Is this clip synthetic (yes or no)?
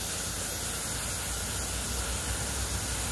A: no